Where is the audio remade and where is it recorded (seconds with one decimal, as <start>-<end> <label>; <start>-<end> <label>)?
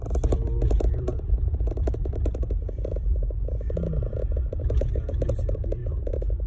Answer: 0.0-1.1 recorded; 1.1-2.2 remade; 2.2-5.8 recorded; 5.8-6.5 remade